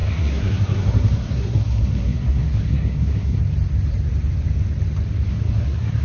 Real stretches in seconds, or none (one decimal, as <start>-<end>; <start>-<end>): 3.4-5.3